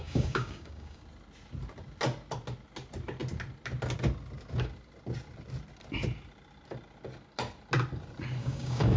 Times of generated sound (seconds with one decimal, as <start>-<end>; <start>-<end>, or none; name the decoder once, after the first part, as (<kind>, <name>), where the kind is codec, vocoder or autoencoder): 0.0-1.0 (codec, DAC); 8.4-9.0